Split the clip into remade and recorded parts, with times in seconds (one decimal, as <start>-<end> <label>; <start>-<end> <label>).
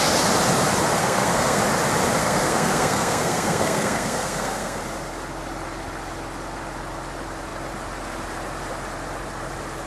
0.0-1.0 recorded; 1.0-1.6 remade; 1.6-2.2 recorded; 2.2-4.8 remade; 4.8-9.9 recorded